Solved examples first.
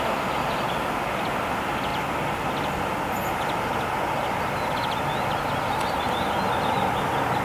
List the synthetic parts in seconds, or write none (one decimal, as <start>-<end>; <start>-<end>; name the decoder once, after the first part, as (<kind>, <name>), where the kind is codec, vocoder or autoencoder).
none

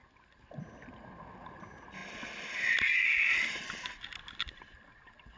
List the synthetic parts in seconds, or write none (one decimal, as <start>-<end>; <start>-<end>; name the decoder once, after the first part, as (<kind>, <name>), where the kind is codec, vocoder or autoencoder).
none

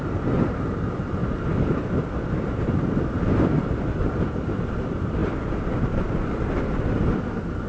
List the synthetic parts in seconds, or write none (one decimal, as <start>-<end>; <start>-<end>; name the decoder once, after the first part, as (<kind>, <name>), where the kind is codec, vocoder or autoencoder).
0.0-7.7 (vocoder, BigVGAN v2)

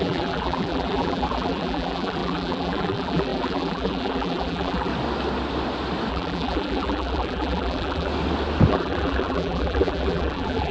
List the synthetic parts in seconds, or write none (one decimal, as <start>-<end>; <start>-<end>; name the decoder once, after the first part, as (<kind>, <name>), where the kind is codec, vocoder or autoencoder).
0.0-4.9 (vocoder, BigVGAN v2); 6.1-8.1; 8.7-10.7

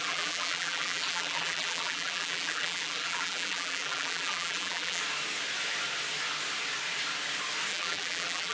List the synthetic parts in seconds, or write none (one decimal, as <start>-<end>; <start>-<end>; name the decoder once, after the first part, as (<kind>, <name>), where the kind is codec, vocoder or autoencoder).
0.0-5.0 (vocoder, BigVGAN v2); 7.7-8.5

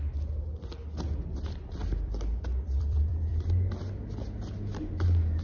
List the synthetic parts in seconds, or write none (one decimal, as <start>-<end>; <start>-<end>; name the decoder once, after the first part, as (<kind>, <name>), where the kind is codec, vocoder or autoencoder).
1.8-3.7 (vocoder, BigVGAN v2)